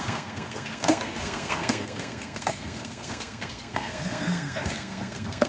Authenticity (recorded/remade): remade